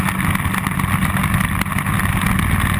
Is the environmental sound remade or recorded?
recorded